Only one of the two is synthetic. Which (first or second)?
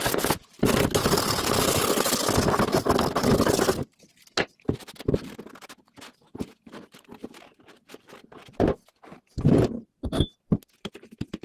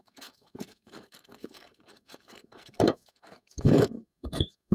second